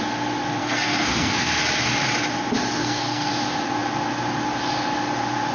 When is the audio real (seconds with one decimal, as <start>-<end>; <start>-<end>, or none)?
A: 0.0-0.6; 1.6-2.8; 3.3-5.5